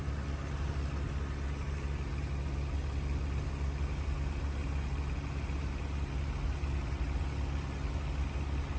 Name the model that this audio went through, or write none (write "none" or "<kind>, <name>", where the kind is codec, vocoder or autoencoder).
none